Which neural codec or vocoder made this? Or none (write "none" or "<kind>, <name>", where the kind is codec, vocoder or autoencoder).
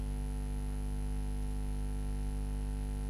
none